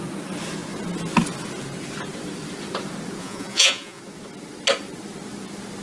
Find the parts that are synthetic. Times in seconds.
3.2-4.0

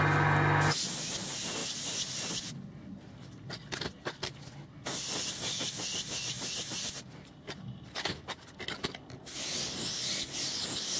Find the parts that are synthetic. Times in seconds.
none

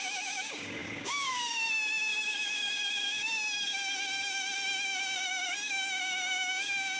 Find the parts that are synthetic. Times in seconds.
0.0-7.0

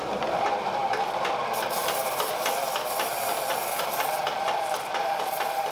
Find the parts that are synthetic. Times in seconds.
none